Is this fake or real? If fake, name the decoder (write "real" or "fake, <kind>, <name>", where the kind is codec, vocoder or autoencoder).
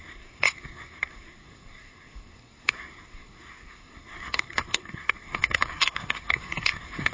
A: fake, codec, SNAC